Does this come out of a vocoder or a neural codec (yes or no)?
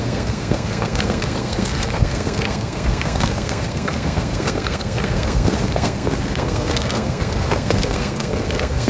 yes